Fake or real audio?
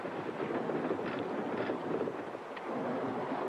real